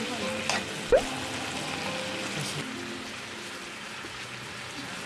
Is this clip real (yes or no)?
yes